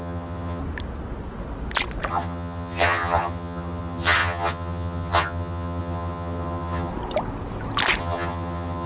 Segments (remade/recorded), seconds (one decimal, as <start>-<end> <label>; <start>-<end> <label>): 0.0-0.6 remade; 0.6-2.1 recorded; 2.1-6.9 remade; 6.9-8.0 recorded; 8.0-8.9 remade